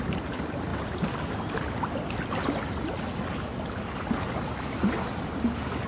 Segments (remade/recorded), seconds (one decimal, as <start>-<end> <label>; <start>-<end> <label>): 0.0-5.9 recorded